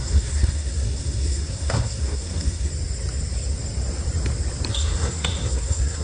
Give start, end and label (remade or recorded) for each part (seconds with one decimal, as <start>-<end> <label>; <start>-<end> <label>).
0.0-2.7 remade; 2.7-4.7 recorded; 4.7-6.0 remade